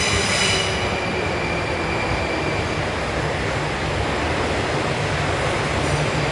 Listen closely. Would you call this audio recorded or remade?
recorded